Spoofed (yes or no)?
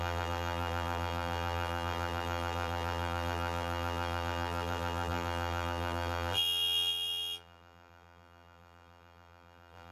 yes